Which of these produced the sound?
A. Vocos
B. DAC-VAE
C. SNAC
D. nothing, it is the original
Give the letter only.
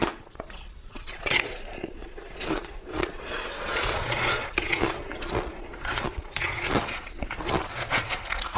A